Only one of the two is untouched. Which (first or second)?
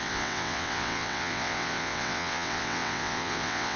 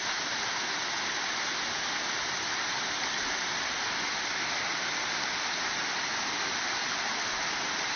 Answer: second